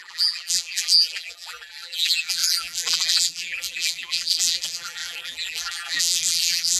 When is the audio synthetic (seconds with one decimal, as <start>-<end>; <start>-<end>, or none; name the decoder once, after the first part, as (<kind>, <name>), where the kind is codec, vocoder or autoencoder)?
0.0-6.8 (vocoder, BigVGAN v2)